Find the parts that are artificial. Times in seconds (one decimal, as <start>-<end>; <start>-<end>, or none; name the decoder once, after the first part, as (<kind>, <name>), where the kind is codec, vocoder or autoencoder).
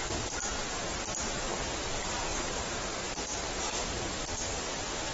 2.3-3.0 (vocoder, BigVGAN v2); 4.2-5.1